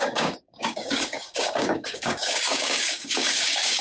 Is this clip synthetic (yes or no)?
yes